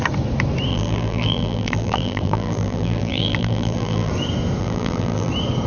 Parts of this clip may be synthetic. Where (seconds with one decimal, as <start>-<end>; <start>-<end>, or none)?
0.7-4.1; 4.6-5.3